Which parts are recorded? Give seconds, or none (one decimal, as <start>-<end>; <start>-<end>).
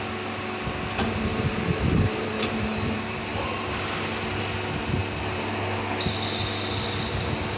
0.0-1.3; 3.7-7.6